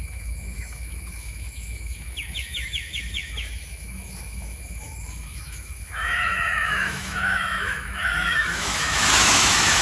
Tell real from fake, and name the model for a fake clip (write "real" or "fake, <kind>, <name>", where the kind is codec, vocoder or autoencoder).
fake, autoencoder, DAC-VAE